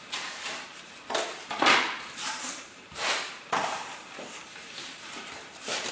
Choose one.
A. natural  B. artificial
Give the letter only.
B